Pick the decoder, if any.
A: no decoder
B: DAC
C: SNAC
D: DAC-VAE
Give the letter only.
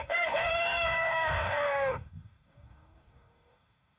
B